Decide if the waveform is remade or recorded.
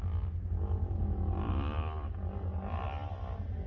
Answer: recorded